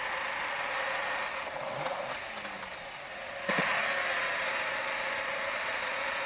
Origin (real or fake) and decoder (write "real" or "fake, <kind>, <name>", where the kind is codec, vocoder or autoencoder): real